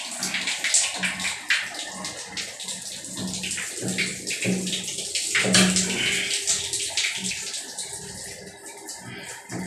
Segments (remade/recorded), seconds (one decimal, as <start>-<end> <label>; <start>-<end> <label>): 0.0-9.7 recorded